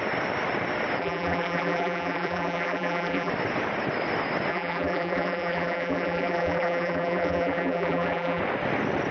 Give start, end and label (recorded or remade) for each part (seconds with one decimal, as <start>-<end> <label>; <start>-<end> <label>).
0.0-1.0 recorded; 1.0-3.3 remade; 3.3-4.5 recorded; 4.5-8.4 remade; 8.4-9.1 recorded